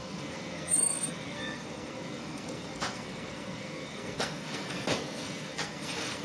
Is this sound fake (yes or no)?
yes